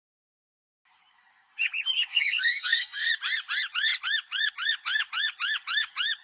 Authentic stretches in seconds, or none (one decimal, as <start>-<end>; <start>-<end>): 0.0-2.1; 3.1-6.2